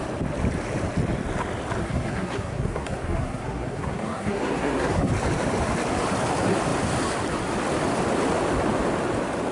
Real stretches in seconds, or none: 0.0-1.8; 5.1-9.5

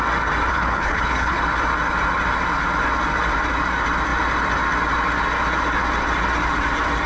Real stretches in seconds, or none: 0.0-0.5; 1.4-7.1

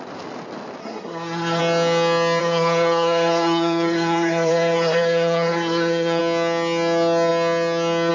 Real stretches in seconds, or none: 0.0-0.8; 1.6-2.4; 6.2-8.1

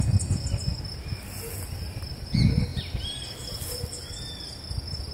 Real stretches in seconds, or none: 0.0-5.1

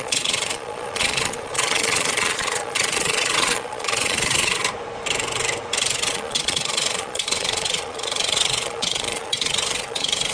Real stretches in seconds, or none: 4.6-6.1